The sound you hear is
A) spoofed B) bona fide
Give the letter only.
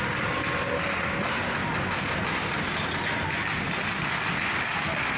B